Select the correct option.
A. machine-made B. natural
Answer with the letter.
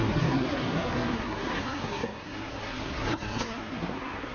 A